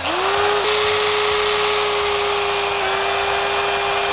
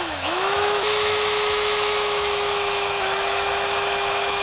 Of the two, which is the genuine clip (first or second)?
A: first